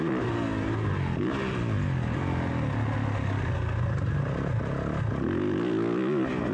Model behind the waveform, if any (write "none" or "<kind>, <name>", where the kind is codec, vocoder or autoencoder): none